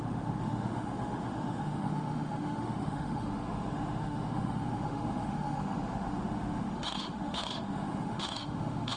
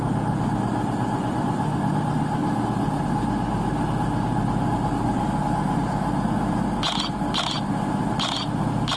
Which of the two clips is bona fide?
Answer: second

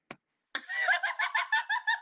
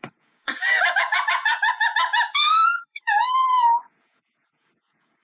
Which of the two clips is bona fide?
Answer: first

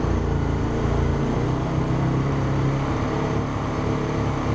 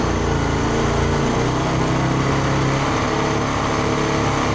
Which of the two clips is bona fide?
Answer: second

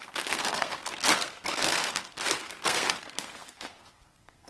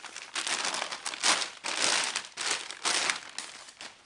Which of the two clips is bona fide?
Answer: second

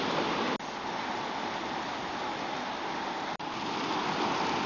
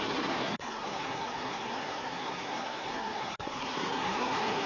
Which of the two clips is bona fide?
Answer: first